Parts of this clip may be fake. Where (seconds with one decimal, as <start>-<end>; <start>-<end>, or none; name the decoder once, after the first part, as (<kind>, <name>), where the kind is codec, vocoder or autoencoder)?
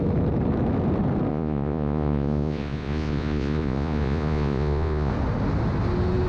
1.3-5.1 (vocoder, Vocos)